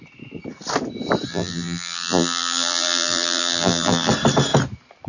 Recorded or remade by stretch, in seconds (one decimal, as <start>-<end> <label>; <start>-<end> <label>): 0.0-1.3 recorded; 1.3-4.1 remade; 4.1-5.1 recorded